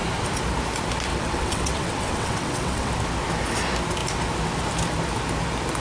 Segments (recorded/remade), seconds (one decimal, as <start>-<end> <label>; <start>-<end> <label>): 0.0-1.1 recorded; 1.1-2.9 remade; 2.9-5.8 recorded